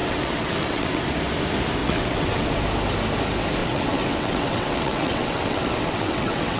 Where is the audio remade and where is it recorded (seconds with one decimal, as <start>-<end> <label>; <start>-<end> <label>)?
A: 0.0-1.0 remade; 1.0-1.8 recorded; 1.8-2.5 remade; 2.5-3.6 recorded; 3.6-6.6 remade